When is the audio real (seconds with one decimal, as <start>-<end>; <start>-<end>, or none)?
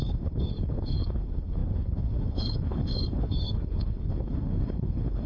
none